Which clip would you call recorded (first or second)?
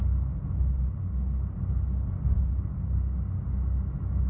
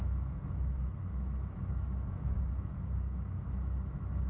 first